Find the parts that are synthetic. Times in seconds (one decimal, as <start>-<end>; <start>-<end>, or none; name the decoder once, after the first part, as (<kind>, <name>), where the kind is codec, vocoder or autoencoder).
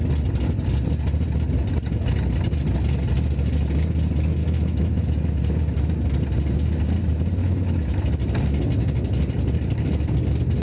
4.4-5.0 (autoencoder, DAC-VAE); 7.4-8.0